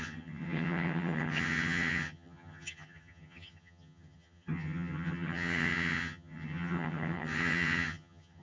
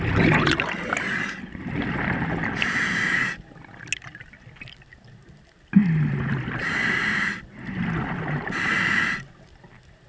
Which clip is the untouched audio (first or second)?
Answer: second